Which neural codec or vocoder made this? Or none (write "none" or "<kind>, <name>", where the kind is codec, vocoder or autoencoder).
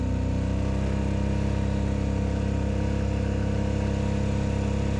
none